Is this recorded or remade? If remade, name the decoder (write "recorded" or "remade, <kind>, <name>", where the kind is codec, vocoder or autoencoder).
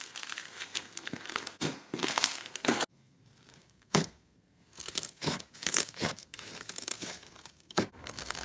remade, codec, SNAC